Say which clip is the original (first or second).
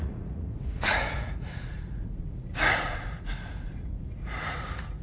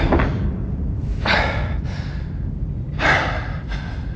second